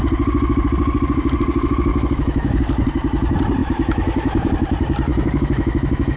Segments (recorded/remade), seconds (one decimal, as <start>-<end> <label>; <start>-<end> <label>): 0.0-1.9 recorded; 1.9-2.6 remade; 2.6-3.6 recorded; 3.6-4.5 remade; 4.5-5.1 recorded; 5.1-6.2 remade

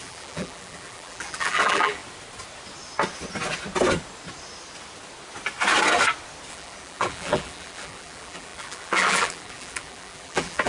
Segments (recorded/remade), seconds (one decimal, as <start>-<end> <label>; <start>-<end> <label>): 0.0-2.0 remade; 2.0-6.5 recorded; 6.5-10.7 remade

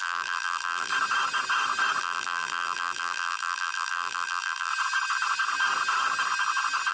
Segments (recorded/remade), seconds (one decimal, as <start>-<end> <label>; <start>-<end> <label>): 0.0-0.9 remade; 0.9-2.0 recorded; 2.0-4.7 remade; 4.7-6.9 recorded

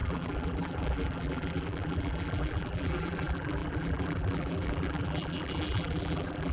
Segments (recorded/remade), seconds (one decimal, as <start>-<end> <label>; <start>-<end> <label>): 0.0-6.5 remade

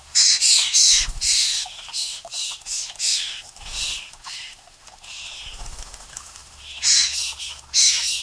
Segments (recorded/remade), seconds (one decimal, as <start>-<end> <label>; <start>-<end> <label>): 0.0-8.2 remade

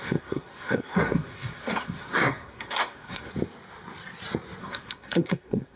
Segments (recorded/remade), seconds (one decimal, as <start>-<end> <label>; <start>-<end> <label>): 0.0-3.3 remade; 3.3-4.6 recorded; 4.6-5.8 remade

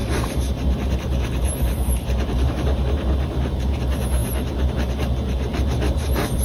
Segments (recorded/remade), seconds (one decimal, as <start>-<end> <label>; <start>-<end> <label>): 0.0-3.8 remade; 3.8-4.2 recorded; 4.2-4.7 remade; 4.7-5.5 recorded; 5.5-6.4 remade

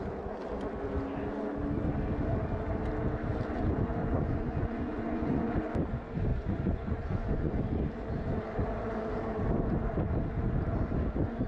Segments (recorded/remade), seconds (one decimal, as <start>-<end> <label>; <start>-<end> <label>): 0.0-4.0 recorded; 4.0-5.6 remade; 5.6-6.3 recorded; 6.3-7.6 remade; 7.6-11.5 recorded